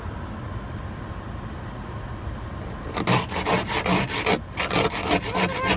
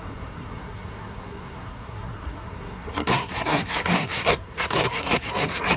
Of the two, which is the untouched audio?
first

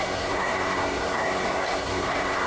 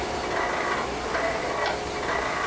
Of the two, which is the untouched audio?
second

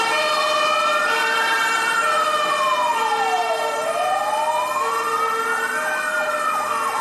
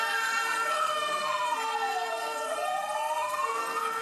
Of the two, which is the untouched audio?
first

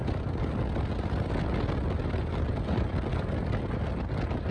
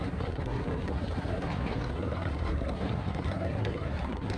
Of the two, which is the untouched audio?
first